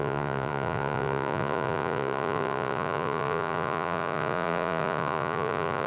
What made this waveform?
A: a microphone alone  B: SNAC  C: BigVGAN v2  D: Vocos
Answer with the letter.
D